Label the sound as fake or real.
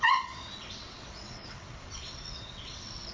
fake